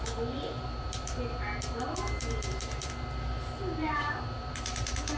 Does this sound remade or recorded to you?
recorded